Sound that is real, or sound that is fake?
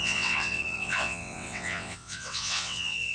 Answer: fake